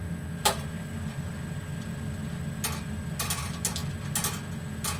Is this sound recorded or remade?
recorded